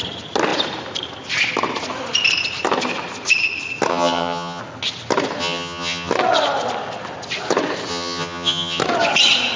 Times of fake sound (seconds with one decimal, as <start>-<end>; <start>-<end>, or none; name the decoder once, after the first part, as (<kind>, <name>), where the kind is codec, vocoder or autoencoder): 3.9-4.6 (vocoder, HiFi-GAN); 5.4-6.1; 7.9-8.8